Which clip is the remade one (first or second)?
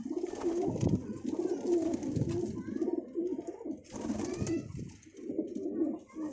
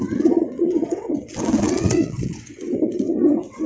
second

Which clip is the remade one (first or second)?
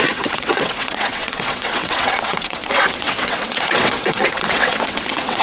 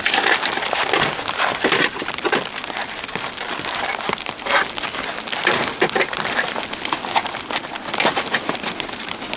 first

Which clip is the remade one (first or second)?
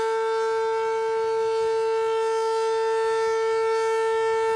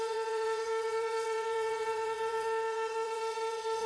second